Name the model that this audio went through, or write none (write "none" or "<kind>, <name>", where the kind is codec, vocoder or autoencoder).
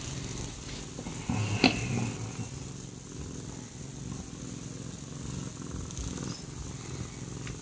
none